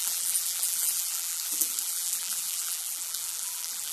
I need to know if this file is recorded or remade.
remade